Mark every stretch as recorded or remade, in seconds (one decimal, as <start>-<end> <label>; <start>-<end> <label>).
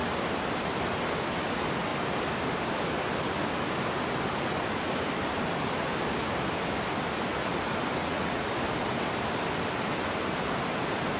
0.0-8.0 recorded; 8.0-8.5 remade; 8.5-11.2 recorded